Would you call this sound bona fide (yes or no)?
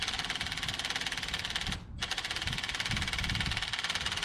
yes